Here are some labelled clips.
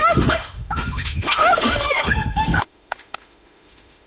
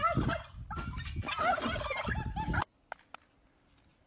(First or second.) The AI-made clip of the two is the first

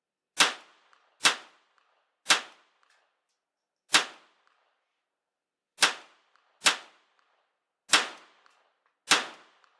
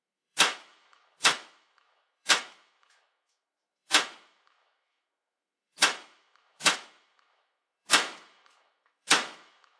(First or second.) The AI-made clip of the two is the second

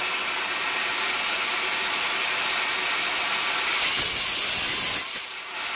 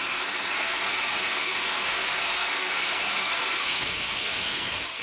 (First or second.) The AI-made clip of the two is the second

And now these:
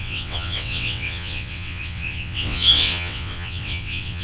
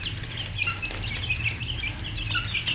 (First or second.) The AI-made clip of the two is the first